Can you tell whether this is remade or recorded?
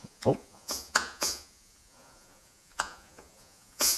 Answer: remade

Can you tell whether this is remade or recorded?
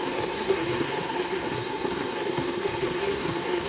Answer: remade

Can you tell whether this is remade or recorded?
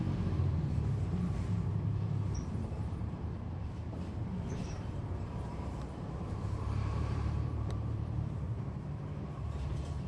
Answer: remade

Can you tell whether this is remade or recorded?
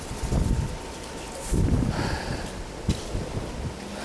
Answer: recorded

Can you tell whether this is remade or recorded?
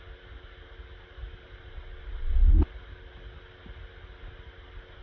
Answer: recorded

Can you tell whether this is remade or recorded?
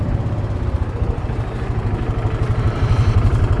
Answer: remade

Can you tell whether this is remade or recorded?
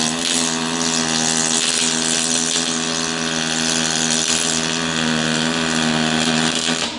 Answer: recorded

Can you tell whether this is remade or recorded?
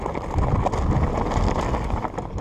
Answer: recorded